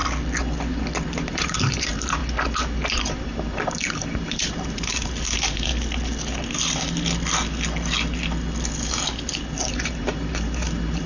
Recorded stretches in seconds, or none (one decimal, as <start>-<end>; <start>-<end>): 0.0-1.3; 2.2-3.0; 5.7-9.7

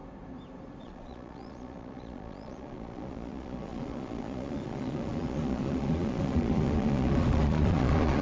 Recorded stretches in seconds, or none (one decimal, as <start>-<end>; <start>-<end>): 0.0-0.8

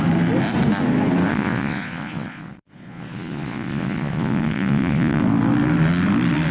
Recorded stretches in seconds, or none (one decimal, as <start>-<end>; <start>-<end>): 0.0-1.3; 5.2-6.5

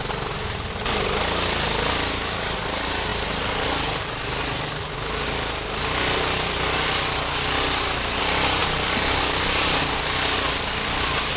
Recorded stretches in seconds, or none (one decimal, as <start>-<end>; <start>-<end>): 0.0-11.4